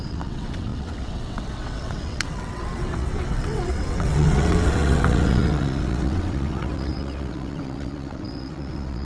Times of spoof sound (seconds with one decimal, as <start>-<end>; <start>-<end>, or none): 0.0-9.0